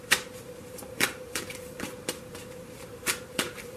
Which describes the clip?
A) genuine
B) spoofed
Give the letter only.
B